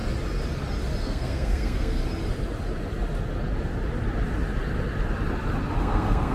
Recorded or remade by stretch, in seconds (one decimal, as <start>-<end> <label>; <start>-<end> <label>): 0.0-1.0 recorded; 1.0-2.0 remade; 2.0-5.8 recorded; 5.8-6.3 remade